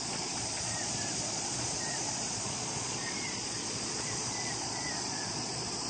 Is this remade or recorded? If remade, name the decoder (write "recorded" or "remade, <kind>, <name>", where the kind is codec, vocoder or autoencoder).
remade, vocoder, Vocos